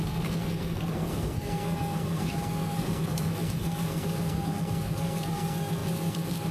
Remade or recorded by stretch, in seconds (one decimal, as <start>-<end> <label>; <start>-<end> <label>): 0.0-6.5 remade